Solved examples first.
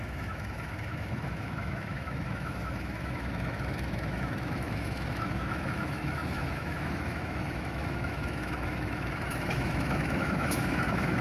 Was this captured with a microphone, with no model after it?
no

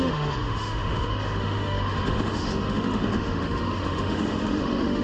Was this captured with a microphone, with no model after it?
no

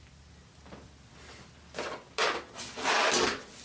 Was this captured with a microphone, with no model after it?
yes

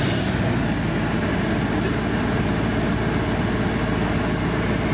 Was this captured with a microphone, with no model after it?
yes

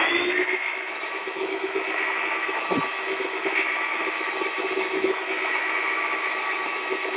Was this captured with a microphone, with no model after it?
no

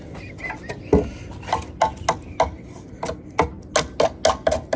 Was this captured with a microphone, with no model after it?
yes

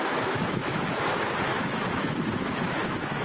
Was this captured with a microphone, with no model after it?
no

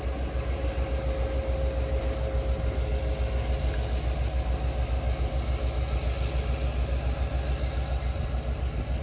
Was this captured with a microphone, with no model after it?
yes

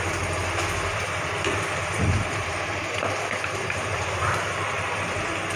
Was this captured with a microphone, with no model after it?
yes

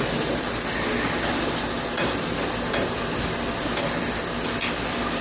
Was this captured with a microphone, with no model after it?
yes